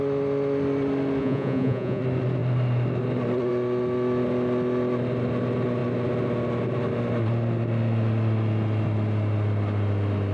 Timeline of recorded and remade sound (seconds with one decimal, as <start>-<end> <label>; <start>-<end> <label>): 0.0-1.2 recorded; 1.2-2.0 remade; 2.0-10.3 recorded

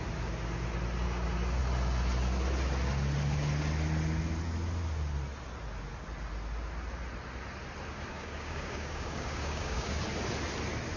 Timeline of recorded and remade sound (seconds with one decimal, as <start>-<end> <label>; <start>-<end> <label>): 0.0-8.1 recorded; 8.1-10.0 remade; 10.0-11.0 recorded

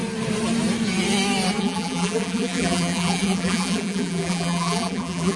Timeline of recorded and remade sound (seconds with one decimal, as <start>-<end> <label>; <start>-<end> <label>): 0.0-1.6 recorded; 1.6-5.4 remade

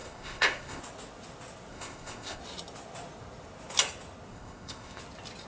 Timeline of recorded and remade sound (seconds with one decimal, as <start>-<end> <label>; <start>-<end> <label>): 0.0-0.8 remade; 0.8-1.7 recorded; 1.7-2.4 remade; 2.4-4.3 recorded; 4.3-5.0 remade; 5.0-5.5 recorded